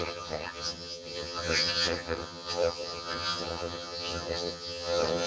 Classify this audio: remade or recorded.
remade